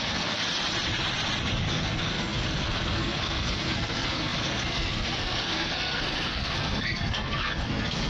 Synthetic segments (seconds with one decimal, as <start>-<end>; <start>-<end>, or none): 0.0-0.4; 1.7-8.1